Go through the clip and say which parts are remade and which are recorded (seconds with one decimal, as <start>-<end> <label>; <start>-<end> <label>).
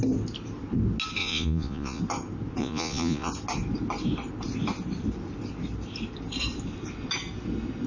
0.0-1.2 recorded; 1.2-2.0 remade; 2.0-2.6 recorded; 2.6-3.3 remade; 3.3-7.9 recorded